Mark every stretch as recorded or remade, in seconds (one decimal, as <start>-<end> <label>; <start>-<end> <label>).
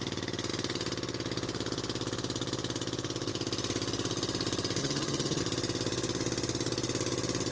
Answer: 0.0-4.8 recorded; 4.8-5.4 remade; 5.4-7.5 recorded